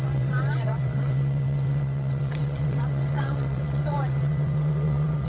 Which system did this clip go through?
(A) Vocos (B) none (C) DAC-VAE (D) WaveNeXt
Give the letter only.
D